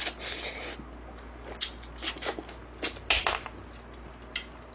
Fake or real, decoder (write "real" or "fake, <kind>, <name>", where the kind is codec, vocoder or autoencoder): real